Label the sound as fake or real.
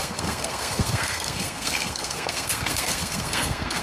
fake